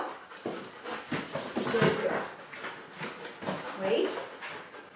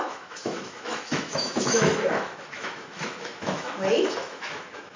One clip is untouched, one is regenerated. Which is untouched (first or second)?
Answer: first